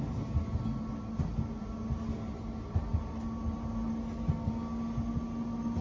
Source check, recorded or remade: recorded